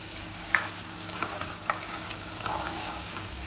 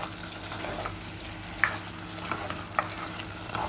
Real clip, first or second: second